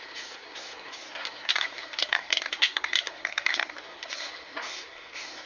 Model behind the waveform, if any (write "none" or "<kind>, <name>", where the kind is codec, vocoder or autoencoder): codec, SNAC